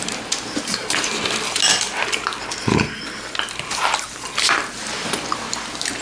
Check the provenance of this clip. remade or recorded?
recorded